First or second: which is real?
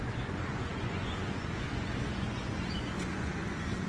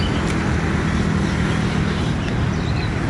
second